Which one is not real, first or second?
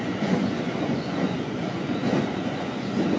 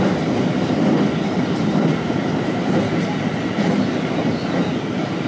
first